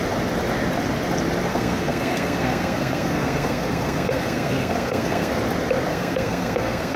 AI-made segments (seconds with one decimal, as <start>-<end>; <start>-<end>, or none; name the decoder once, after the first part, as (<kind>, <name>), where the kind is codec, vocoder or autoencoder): 1.5-5.3 (codec, SNAC); 5.9-7.0